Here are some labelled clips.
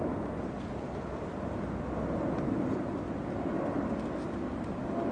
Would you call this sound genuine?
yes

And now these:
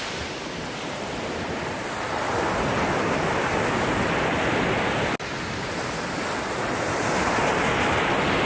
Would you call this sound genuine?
yes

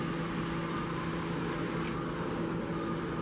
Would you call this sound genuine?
yes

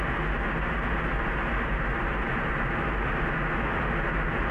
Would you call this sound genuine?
yes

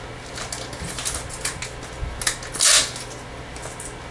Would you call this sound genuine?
yes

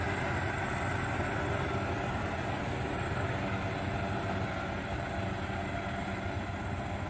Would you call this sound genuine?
yes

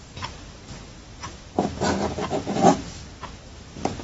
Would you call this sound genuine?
yes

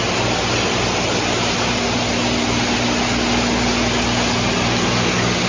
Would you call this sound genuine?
yes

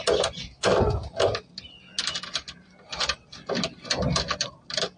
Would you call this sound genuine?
yes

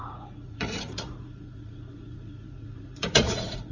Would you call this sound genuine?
no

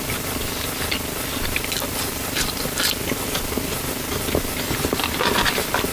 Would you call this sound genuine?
yes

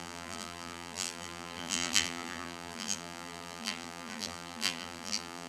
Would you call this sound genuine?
no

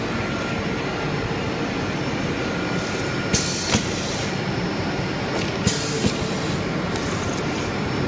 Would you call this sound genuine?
yes